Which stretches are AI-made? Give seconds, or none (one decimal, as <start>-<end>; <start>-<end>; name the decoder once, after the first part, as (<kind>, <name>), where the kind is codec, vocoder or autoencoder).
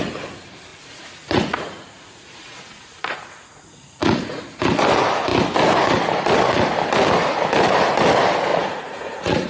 0.7-4.4 (vocoder, Vocos); 8.5-9.5